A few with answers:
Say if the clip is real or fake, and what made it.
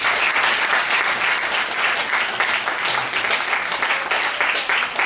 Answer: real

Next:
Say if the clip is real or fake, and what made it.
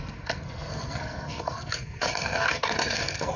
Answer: fake, codec, SNAC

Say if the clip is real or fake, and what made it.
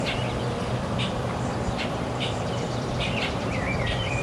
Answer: fake, vocoder, BigVGAN v2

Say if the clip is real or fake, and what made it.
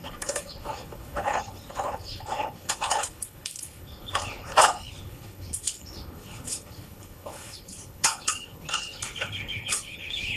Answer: fake, codec, HILCodec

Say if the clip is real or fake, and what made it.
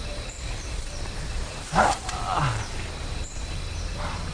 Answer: real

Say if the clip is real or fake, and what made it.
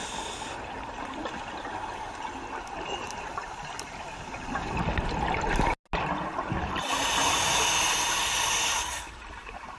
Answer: real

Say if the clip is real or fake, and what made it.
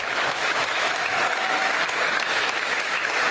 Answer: fake, autoencoder, DAC-VAE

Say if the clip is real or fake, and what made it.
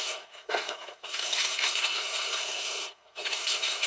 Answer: fake, codec, SNAC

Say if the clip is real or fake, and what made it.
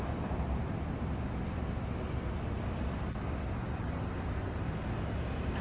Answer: real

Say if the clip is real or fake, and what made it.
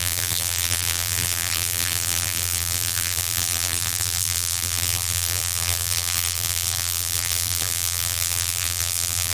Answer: fake, vocoder, BigVGAN v2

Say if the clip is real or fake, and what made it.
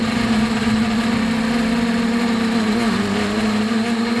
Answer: real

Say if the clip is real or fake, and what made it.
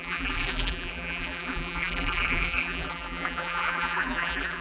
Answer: fake, vocoder, BigVGAN v2